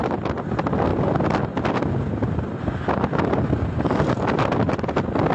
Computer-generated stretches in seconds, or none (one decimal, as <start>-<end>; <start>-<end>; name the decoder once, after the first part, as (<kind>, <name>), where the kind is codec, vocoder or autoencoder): none